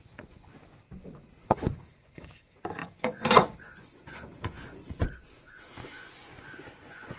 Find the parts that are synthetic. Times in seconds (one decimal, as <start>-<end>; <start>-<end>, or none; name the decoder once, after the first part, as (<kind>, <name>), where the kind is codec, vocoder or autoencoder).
0.0-0.5 (vocoder, Vocos); 1.4-7.2